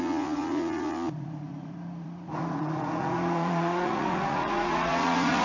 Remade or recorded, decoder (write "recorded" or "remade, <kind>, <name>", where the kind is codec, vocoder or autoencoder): remade, vocoder, Vocos